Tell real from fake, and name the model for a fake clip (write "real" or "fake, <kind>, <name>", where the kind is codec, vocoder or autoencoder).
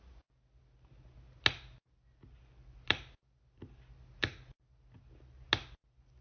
real